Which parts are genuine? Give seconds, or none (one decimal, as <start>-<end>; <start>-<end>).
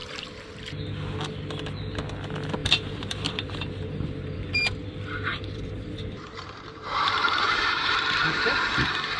0.6-2.6; 4.6-5.3; 8.0-9.2